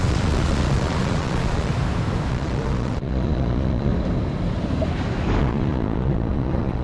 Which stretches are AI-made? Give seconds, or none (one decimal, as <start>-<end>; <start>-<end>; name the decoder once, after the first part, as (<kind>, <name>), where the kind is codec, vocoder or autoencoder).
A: 0.0-1.7 (vocoder, Vocos); 2.3-3.9; 5.4-6.8